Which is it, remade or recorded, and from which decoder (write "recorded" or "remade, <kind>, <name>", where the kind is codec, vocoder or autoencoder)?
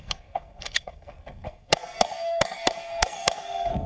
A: remade, codec, SNAC